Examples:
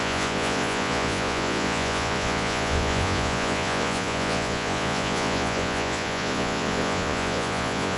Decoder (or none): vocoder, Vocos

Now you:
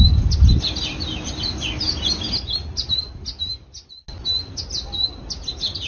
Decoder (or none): none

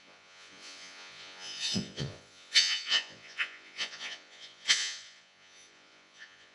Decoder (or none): vocoder, Vocos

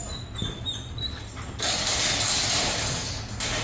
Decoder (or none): none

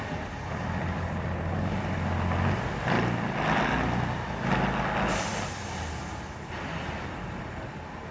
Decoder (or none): none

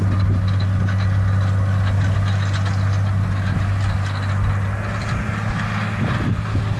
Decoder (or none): none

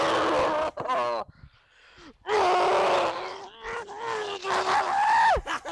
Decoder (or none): none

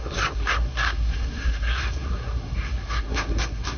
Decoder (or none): codec, SNAC